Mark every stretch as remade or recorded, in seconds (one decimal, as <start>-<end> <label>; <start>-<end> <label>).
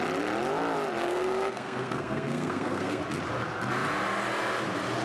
0.0-1.0 recorded; 1.0-3.0 remade; 3.0-5.0 recorded